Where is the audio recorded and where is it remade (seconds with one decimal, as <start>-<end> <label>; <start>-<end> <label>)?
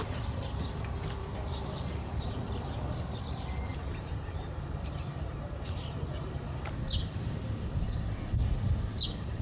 0.0-1.2 recorded; 1.2-2.5 remade; 2.5-3.7 recorded; 3.7-6.3 remade; 6.3-9.4 recorded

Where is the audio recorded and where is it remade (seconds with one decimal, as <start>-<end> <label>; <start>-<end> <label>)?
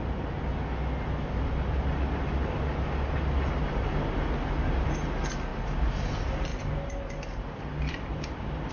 0.0-5.5 recorded; 5.5-6.1 remade; 6.1-6.5 recorded; 6.5-8.7 remade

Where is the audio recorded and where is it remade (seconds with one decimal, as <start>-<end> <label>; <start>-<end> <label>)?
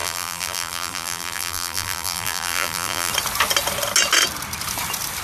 0.0-3.1 remade; 3.1-5.2 recorded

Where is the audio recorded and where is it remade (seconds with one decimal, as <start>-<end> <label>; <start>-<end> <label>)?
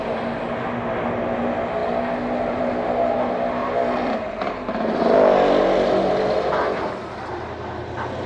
0.0-3.6 recorded; 3.6-5.0 remade; 5.0-8.3 recorded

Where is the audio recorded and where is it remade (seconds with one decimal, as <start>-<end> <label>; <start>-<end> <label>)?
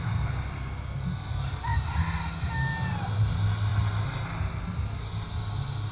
0.0-5.9 recorded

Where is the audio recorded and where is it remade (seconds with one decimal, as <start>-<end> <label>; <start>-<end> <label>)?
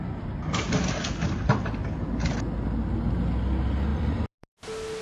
0.0-3.9 recorded; 3.9-4.5 remade; 4.5-5.0 recorded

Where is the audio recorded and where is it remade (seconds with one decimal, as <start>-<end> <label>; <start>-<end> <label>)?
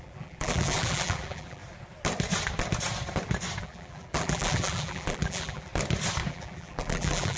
0.0-1.6 remade; 1.6-3.6 recorded; 3.6-5.7 remade; 5.7-6.3 recorded; 6.3-7.4 remade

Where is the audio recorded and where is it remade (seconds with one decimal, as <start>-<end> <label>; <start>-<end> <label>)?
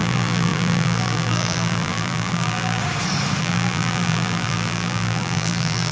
0.0-2.8 remade; 2.8-3.4 recorded; 3.4-5.9 remade